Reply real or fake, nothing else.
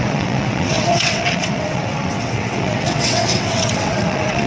fake